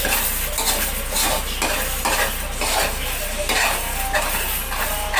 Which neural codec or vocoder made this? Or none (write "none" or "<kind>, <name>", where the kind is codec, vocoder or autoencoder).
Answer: none